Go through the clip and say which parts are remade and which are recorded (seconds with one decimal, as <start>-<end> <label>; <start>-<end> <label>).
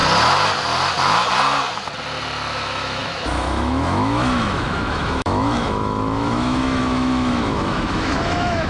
0.0-2.5 recorded; 2.5-8.7 remade